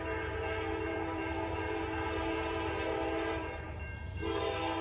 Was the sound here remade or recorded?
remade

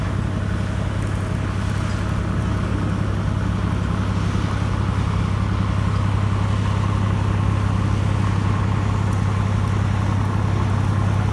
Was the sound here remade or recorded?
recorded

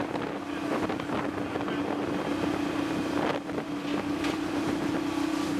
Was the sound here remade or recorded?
recorded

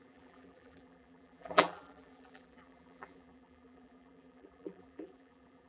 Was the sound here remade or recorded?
remade